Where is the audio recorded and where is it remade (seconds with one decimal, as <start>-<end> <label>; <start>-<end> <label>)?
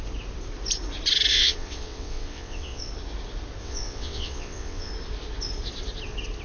0.0-1.3 recorded; 1.3-2.9 remade; 2.9-3.6 recorded; 3.6-4.9 remade; 4.9-6.4 recorded